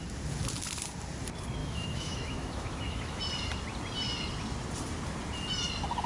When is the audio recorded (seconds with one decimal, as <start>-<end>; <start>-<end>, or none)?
0.0-1.6; 3.2-6.1